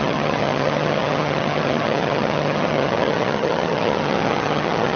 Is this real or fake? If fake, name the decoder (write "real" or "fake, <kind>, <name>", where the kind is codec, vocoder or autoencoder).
fake, vocoder, HiFi-GAN